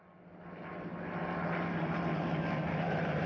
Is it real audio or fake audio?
real